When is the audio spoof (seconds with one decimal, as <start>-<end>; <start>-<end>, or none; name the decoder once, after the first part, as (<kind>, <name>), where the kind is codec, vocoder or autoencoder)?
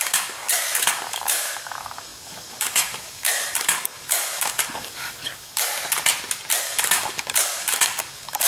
0.0-5.7 (codec, DAC); 6.6-8.5